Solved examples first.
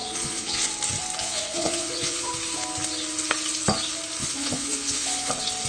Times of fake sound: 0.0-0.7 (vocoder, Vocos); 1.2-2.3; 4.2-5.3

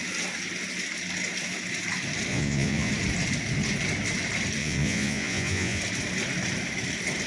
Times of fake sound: 2.3-2.9 (vocoder, Vocos); 4.6-5.8

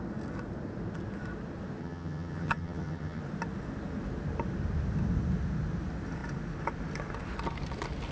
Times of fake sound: 1.8-3.2 (vocoder, HiFi-GAN)

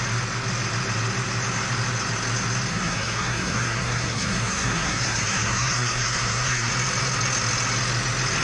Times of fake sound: 2.7-6.7 (codec, SNAC)